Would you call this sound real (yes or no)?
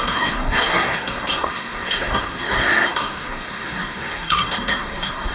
no